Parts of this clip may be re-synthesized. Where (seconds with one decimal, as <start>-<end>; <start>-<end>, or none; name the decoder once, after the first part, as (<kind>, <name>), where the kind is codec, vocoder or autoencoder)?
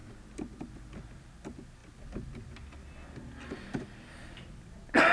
none